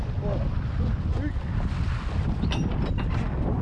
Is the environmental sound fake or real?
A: real